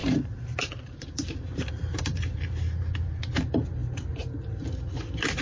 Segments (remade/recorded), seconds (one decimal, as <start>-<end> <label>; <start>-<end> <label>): 0.0-3.2 remade; 3.2-5.4 recorded